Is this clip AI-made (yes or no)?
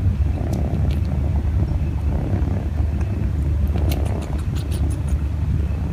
no